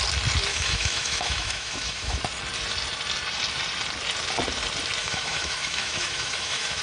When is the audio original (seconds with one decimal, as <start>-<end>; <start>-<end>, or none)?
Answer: 0.0-0.5; 2.2-5.0